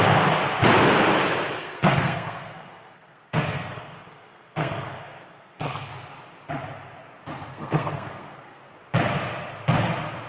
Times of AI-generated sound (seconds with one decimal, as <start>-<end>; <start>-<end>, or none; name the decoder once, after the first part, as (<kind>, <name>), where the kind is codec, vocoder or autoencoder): 1.6-5.9 (codec, SNAC); 7.5-8.7